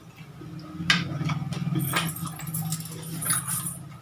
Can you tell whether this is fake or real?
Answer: real